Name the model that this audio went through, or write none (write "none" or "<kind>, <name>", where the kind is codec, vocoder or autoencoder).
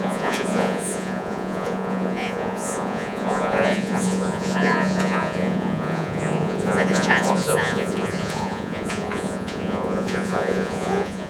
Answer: vocoder, Vocos